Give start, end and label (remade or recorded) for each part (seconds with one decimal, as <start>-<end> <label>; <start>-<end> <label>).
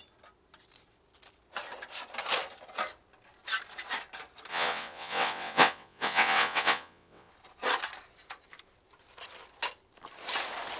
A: 0.0-4.5 recorded; 4.5-7.3 remade; 7.3-10.8 recorded